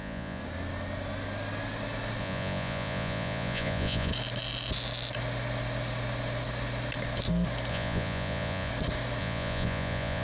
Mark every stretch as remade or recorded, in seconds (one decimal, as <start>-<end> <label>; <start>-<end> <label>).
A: 0.0-0.4 remade; 0.4-2.2 recorded; 2.2-4.1 remade; 4.1-7.7 recorded; 7.7-8.7 remade; 8.7-9.2 recorded; 9.2-10.2 remade